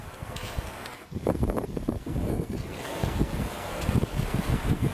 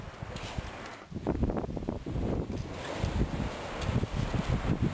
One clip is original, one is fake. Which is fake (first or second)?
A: first